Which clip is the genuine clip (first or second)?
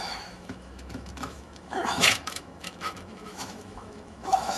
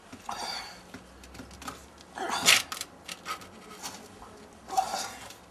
second